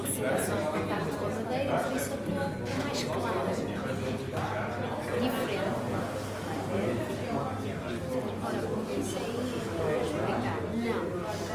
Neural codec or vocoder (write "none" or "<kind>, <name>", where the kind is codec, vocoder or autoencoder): none